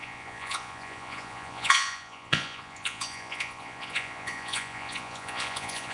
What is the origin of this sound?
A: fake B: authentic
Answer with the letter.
A